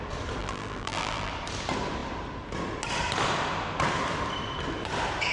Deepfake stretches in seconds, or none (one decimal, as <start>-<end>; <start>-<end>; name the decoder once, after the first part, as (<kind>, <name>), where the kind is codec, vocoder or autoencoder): 0.4-1.3 (vocoder, BigVGAN v2)